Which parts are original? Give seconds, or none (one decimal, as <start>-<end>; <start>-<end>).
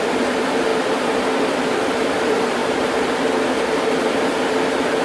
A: 0.7-1.4